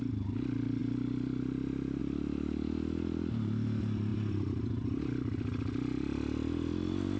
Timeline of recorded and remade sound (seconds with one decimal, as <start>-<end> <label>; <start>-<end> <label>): 0.0-4.1 recorded; 4.1-5.0 remade; 5.0-7.2 recorded

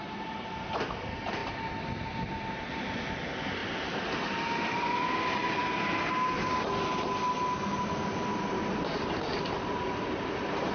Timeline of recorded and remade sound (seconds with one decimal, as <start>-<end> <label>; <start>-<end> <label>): 0.0-10.7 recorded

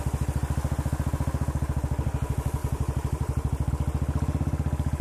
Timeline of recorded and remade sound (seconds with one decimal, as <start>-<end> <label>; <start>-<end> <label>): 0.0-2.6 recorded; 2.6-3.7 remade; 3.7-5.0 recorded

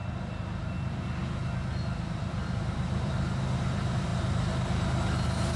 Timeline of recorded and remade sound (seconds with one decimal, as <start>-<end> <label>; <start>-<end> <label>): 0.0-0.7 recorded; 0.7-1.2 remade; 1.2-1.7 recorded; 1.7-4.1 remade; 4.1-5.6 recorded

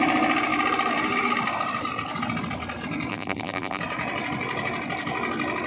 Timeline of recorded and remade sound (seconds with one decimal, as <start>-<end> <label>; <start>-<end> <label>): 0.0-3.1 recorded; 3.1-3.8 remade; 3.8-5.7 recorded